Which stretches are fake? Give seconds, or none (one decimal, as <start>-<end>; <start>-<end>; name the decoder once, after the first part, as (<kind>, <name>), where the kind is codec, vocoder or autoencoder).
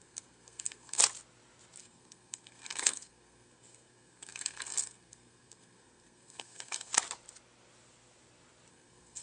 0.0-1.0 (codec, SNAC); 1.8-6.9; 8.7-9.2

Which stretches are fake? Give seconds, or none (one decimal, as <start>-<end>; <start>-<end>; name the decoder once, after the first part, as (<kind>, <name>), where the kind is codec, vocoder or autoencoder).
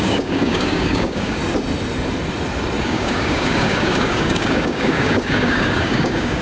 0.0-1.4 (codec, DAC); 2.8-6.4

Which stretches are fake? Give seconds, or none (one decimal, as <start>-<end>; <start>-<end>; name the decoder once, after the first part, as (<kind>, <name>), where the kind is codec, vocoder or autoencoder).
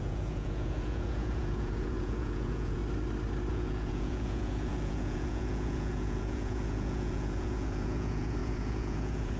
0.0-2.8 (vocoder, Vocos); 3.5-9.4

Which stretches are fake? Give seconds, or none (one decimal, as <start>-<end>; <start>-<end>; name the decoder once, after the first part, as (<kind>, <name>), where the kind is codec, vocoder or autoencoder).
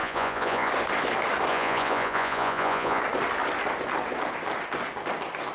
0.0-0.7 (vocoder, Vocos); 1.5-3.0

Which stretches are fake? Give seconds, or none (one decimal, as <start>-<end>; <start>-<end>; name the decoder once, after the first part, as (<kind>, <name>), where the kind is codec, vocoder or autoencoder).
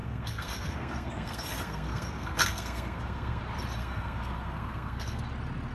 0.0-3.4 (codec, SNAC); 3.8-5.2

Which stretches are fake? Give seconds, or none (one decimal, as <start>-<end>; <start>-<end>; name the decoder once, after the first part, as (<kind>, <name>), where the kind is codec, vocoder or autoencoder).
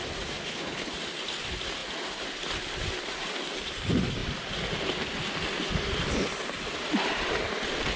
0.4-0.9 (codec, HILCodec)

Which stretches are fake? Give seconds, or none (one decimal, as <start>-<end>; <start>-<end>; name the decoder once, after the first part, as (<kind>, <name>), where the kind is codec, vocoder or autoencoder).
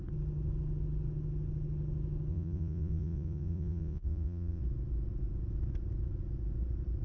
2.3-4.6 (vocoder, Vocos)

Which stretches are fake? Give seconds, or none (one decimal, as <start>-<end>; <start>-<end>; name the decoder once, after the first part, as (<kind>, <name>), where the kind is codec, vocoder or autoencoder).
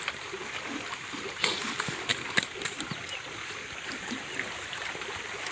none